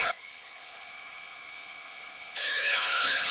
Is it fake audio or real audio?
fake